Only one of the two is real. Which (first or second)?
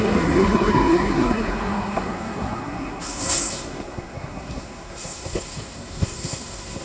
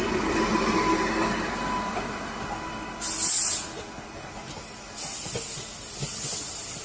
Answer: second